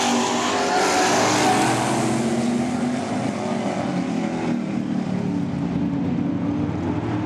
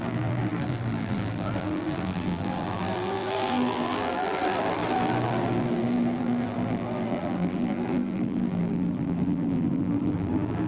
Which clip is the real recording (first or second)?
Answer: first